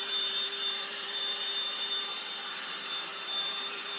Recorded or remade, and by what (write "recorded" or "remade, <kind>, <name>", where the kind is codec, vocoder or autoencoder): remade, vocoder, BigVGAN v2